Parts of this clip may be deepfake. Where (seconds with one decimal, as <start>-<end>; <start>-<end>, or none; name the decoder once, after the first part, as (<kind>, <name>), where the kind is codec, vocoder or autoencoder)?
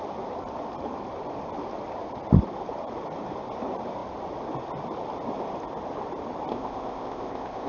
6.5-7.7 (codec, ZipCodec)